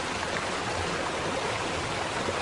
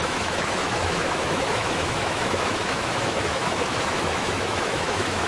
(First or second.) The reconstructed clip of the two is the second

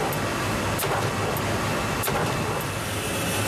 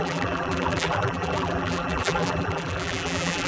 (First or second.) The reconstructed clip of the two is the second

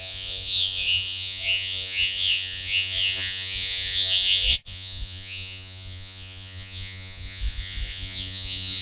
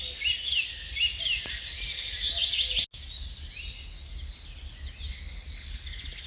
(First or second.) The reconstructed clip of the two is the first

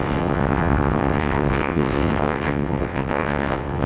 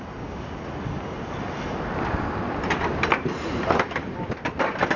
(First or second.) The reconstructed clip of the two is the first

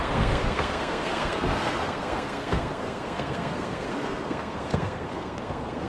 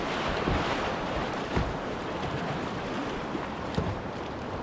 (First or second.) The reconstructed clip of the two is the first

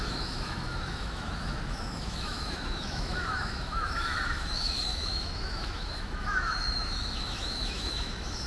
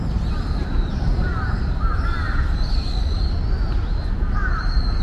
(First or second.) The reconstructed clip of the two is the first